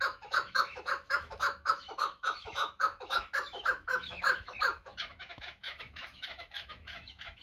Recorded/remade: remade